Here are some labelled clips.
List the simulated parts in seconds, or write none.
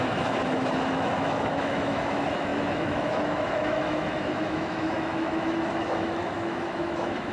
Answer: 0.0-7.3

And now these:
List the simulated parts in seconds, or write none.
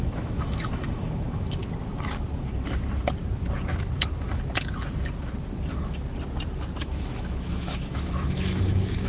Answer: 0.0-1.6; 6.8-9.1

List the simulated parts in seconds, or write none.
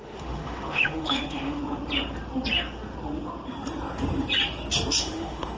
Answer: 0.0-1.6; 5.0-5.6